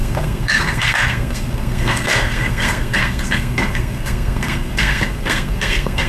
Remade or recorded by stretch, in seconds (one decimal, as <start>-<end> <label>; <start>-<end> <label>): 0.0-6.1 remade